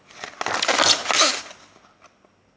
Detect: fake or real real